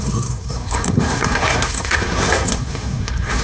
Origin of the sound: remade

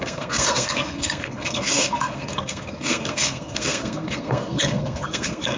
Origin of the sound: remade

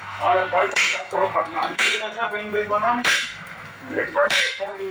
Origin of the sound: remade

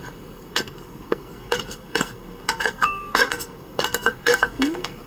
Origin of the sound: remade